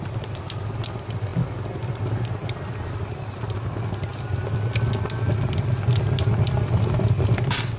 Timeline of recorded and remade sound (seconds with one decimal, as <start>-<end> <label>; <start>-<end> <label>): 0.0-7.8 recorded